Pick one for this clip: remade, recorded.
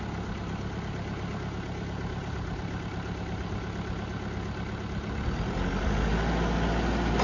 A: recorded